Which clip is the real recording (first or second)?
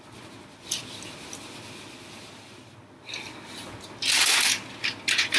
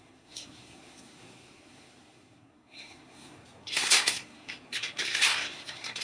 first